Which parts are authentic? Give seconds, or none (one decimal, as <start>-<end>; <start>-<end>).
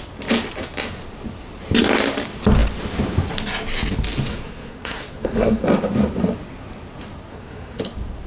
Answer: 0.0-4.3; 5.6-7.3; 7.8-8.3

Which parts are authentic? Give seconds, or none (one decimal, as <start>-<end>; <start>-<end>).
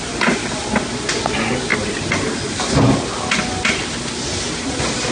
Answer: 0.0-5.1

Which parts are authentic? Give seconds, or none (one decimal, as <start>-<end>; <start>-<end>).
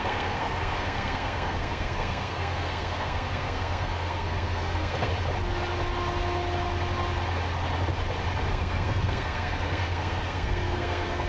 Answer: 5.1-8.5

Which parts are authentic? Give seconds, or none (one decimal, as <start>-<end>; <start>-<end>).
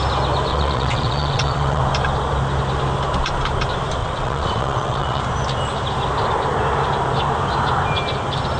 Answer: 0.0-0.5; 1.8-4.0; 5.2-8.6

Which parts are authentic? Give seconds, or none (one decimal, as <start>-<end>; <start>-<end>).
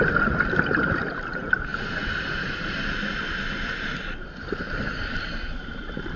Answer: 0.0-6.2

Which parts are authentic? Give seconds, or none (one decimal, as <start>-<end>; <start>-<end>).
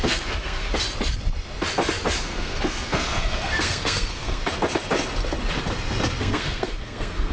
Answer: 0.7-2.2; 4.4-6.2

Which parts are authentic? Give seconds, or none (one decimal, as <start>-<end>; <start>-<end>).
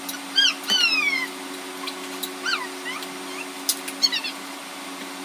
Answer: 0.0-4.1; 4.6-5.2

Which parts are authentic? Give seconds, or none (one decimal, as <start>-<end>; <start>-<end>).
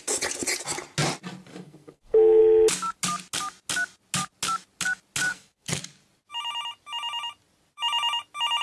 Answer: 0.0-1.5; 2.4-5.3; 5.8-8.6